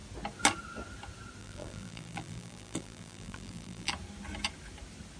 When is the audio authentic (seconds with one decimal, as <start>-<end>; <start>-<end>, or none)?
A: 0.0-1.4; 3.9-5.2